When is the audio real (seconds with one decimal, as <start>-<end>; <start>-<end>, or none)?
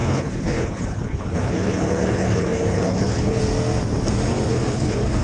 3.4-4.5